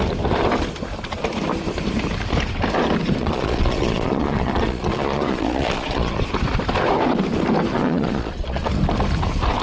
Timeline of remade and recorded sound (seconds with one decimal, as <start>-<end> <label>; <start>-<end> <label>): 0.0-3.2 recorded; 3.2-6.2 remade; 6.2-7.7 recorded; 7.7-8.7 remade; 8.7-9.6 recorded